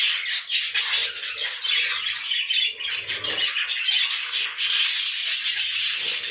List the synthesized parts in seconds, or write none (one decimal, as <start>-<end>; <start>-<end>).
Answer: 4.2-5.0